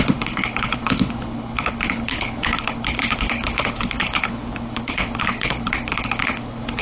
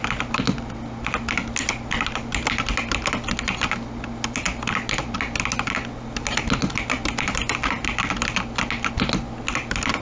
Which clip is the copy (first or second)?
first